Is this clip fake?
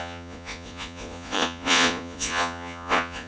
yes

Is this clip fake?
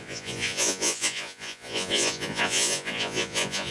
yes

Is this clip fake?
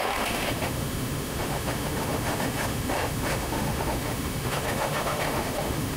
yes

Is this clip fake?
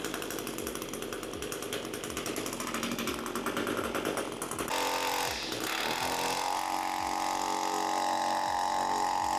no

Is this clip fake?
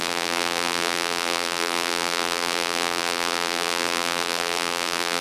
yes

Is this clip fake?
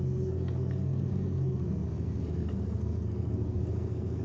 yes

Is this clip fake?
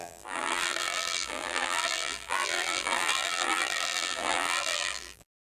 yes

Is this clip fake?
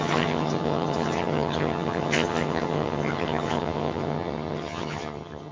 yes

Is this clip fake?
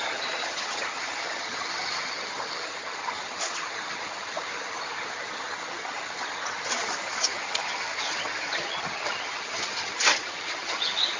yes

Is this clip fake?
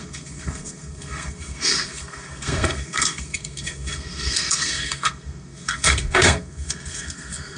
yes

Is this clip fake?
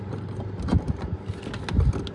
no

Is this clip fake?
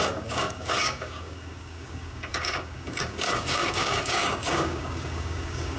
yes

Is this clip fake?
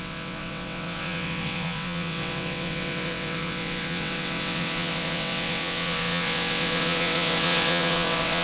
yes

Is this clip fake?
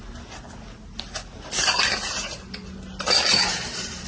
no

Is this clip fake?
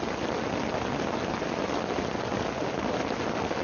no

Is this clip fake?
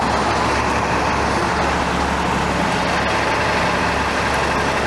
no